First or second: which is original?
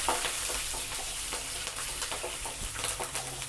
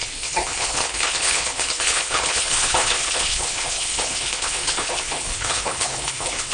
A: first